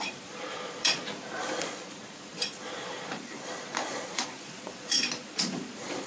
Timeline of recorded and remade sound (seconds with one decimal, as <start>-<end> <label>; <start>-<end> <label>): 0.0-1.0 remade; 1.0-1.6 recorded; 1.6-6.1 remade